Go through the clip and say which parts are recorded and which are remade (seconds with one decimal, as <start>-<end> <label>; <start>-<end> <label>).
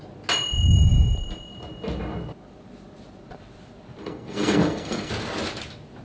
0.0-4.0 recorded; 4.0-5.1 remade; 5.1-6.0 recorded